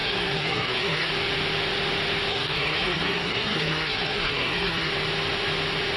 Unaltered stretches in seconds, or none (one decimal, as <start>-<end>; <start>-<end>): 1.1-2.3; 4.9-6.0